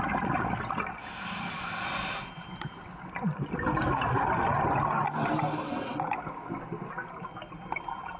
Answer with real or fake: real